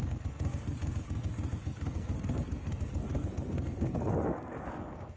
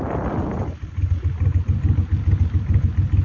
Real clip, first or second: second